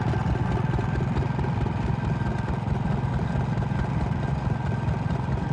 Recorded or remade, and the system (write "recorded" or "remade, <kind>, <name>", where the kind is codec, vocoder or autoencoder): recorded